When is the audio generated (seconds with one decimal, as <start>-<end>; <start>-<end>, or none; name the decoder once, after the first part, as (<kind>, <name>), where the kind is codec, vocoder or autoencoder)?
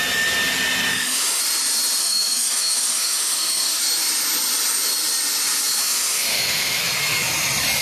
0.9-1.4 (autoencoder, DAC-VAE); 2.0-3.8; 5.8-6.8